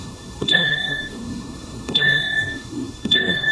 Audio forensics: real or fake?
fake